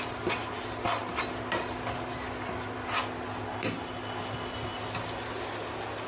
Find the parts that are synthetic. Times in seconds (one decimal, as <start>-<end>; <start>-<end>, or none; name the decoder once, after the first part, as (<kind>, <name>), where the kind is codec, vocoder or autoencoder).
none